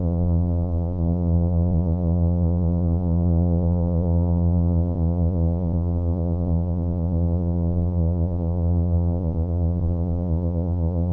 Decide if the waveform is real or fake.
fake